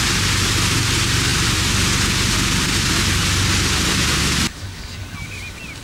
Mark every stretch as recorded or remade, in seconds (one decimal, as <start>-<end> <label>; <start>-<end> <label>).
0.0-5.8 recorded